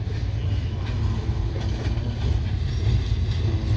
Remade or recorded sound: recorded